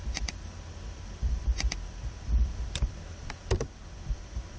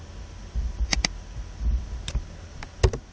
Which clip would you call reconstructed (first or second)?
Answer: first